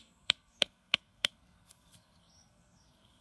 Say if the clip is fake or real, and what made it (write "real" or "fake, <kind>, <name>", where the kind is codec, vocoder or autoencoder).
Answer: fake, codec, SNAC